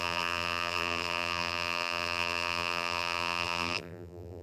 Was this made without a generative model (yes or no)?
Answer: no